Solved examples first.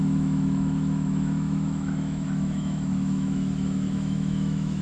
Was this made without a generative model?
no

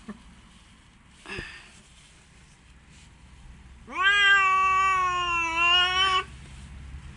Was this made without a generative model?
yes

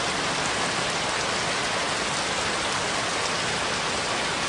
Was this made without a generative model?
yes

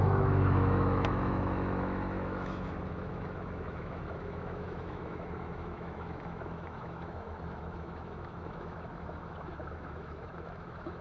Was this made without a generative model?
no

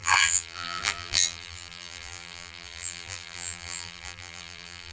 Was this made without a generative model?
no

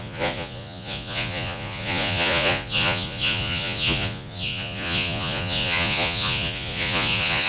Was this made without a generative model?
no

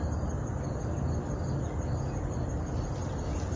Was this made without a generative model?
yes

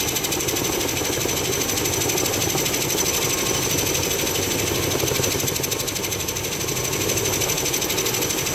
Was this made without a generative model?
yes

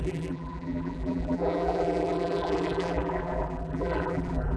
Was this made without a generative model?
no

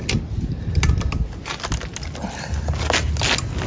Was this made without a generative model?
yes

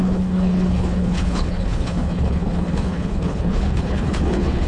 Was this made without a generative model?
no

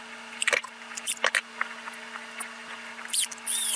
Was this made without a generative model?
yes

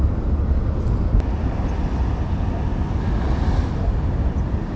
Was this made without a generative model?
yes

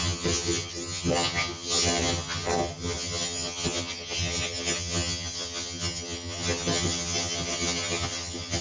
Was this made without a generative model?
no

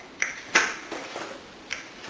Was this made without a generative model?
yes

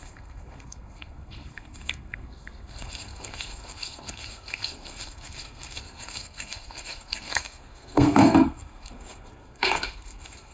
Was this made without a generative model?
no